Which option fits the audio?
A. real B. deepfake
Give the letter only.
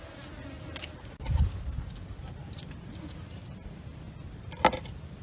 A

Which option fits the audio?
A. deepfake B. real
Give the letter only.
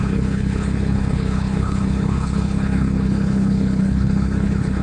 A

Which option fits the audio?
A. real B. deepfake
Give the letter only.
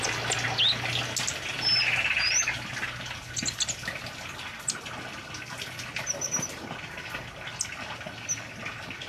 A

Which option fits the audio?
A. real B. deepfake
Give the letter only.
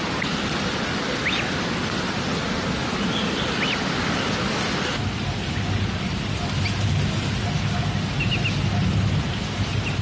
A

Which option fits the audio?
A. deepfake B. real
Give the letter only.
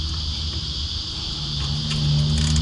B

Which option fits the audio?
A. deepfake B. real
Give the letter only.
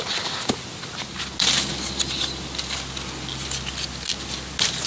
B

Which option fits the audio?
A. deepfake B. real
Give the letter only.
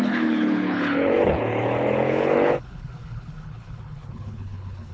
A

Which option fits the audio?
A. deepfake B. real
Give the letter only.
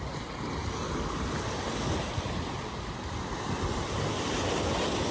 B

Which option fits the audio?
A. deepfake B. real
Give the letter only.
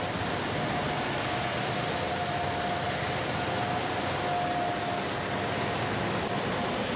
B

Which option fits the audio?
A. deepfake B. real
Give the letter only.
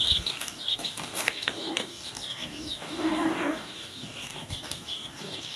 A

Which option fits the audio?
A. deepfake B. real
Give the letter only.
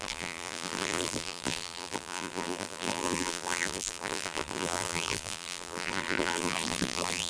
A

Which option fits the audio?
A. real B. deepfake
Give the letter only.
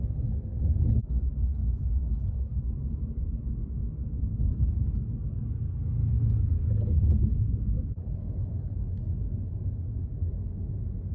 B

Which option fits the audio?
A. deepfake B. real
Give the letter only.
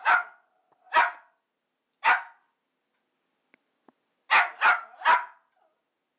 B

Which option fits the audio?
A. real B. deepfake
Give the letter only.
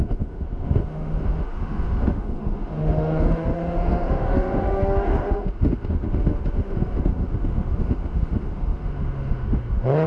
B